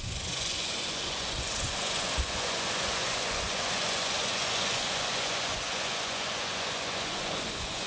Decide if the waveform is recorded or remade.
remade